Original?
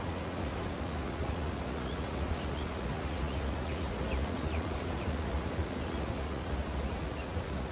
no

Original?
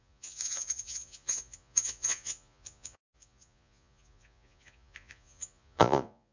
no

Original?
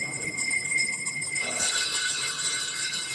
no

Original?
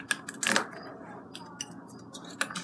yes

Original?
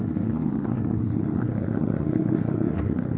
no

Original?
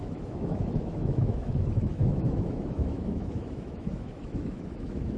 no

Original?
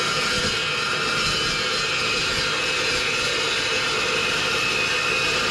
yes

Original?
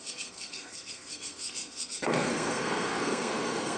no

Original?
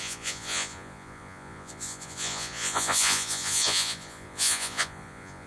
no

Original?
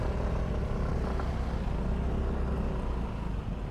yes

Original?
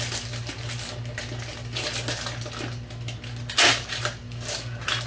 yes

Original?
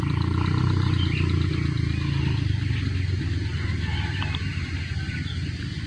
yes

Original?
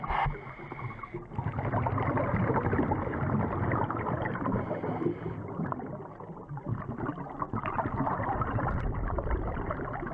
yes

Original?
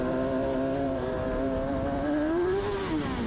yes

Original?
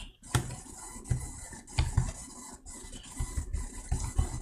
yes